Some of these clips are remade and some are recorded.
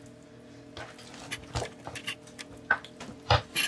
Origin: recorded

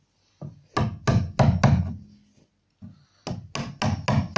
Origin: recorded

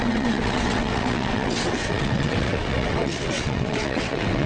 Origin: remade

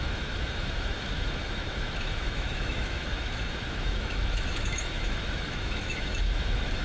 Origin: remade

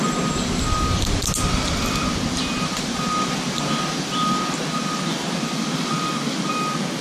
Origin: recorded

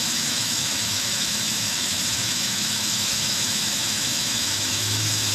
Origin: remade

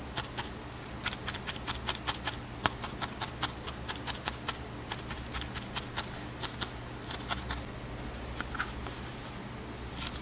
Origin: recorded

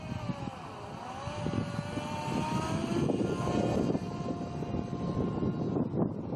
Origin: recorded